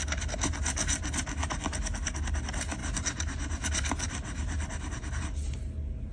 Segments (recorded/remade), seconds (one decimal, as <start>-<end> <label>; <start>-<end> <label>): 0.0-6.1 recorded